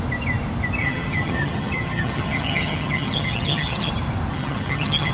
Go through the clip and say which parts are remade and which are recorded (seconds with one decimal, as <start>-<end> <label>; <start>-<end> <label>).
0.0-0.8 recorded; 0.8-3.9 remade; 3.9-4.3 recorded; 4.3-5.1 remade